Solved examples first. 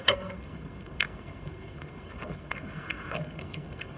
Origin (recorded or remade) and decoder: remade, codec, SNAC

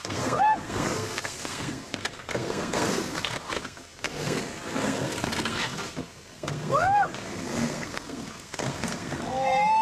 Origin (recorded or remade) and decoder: remade, codec, SNAC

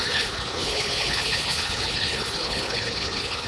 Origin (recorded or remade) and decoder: remade, codec, HILCodec